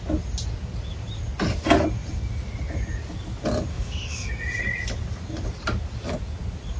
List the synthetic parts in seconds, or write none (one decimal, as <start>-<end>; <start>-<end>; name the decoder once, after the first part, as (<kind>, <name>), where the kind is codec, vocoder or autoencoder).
3.7-4.3 (autoencoder, DAC-VAE)